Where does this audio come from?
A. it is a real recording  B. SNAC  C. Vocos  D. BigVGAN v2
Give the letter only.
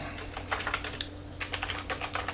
A